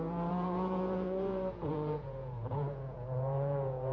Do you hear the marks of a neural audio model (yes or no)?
yes